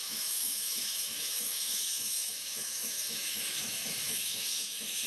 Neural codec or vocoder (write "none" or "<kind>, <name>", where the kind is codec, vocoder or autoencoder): autoencoder, DAC-VAE